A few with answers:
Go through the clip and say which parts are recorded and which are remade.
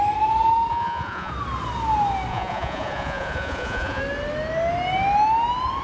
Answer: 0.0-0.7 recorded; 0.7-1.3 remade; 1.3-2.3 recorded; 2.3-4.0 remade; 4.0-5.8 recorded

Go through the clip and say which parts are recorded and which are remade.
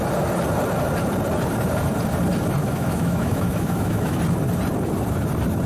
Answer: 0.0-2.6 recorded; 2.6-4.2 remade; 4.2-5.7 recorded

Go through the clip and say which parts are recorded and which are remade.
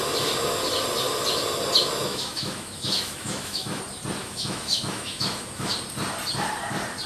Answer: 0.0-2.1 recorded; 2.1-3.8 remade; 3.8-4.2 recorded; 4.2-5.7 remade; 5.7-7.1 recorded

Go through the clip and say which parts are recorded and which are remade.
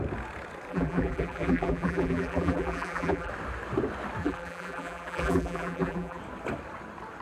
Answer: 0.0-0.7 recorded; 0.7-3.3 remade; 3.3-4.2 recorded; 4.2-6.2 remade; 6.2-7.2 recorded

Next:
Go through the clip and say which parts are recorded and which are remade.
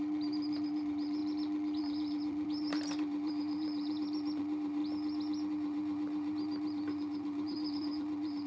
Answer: 0.0-1.2 remade; 1.2-1.8 recorded; 1.8-4.8 remade; 4.8-5.5 recorded; 5.5-8.5 remade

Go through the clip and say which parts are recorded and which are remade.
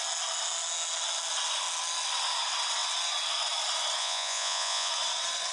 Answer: 0.0-4.0 recorded; 4.0-4.9 remade; 4.9-5.5 recorded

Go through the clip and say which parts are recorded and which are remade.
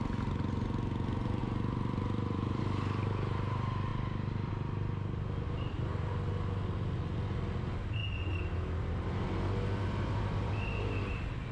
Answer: 0.0-1.4 recorded; 1.4-2.6 remade; 2.6-3.9 recorded; 3.9-4.5 remade; 4.5-11.5 recorded